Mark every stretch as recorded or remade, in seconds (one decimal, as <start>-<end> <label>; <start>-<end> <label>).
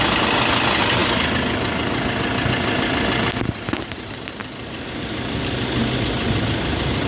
0.0-7.1 recorded